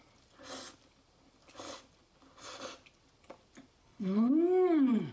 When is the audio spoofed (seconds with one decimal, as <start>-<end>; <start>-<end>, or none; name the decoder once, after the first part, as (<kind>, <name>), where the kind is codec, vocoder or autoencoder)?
3.8-4.3 (codec, HILCodec)